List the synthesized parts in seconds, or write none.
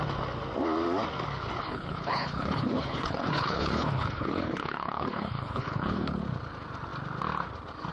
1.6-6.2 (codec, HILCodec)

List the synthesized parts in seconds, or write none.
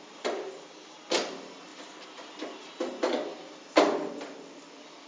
none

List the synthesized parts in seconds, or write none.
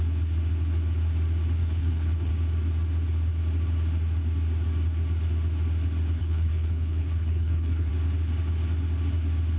1.6-2.3 (codec, HILCodec); 6.2-7.9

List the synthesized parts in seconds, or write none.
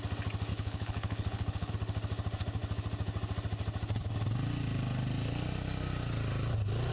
0.5-1.7 (codec, HILCodec)